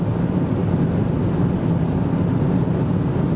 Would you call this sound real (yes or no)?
yes